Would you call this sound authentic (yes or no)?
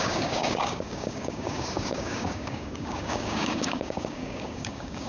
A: no